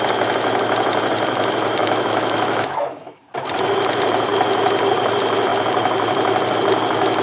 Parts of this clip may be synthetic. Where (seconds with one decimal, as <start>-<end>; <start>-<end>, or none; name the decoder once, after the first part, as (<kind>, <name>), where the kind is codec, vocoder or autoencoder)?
1.8-3.2 (autoencoder, DAC-VAE)